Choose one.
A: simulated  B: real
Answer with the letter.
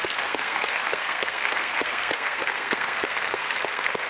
A